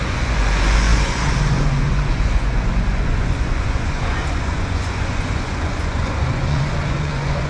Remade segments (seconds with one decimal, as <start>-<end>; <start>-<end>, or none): 0.0-7.5